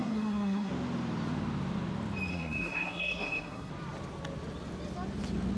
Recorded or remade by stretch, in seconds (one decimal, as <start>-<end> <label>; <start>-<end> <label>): 0.0-0.7 remade; 0.7-2.3 recorded; 2.3-3.7 remade; 3.7-5.6 recorded